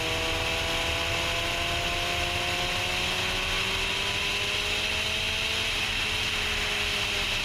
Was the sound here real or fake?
real